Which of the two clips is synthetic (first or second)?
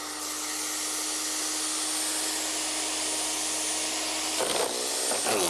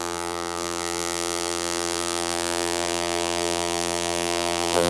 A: second